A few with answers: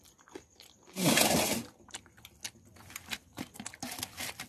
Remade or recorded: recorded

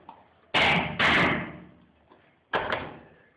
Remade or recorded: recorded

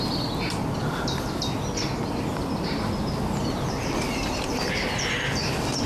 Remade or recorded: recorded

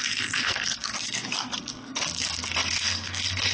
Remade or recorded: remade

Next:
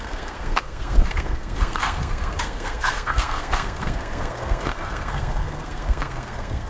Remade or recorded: remade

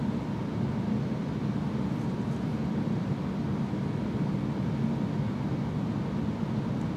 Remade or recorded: recorded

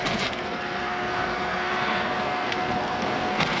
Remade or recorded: remade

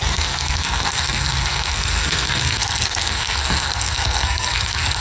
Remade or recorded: remade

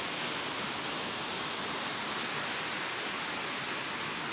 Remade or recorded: recorded